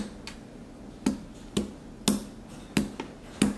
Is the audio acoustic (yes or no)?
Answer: yes